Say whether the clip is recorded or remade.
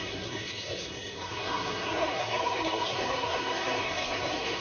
remade